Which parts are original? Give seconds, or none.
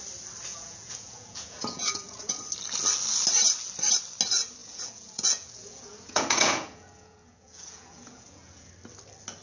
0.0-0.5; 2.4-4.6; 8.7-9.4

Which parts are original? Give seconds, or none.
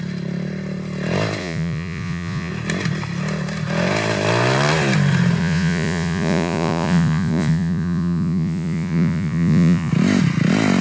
0.0-1.4; 2.5-5.4; 9.9-10.8